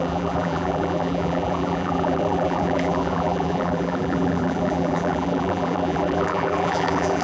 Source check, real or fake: fake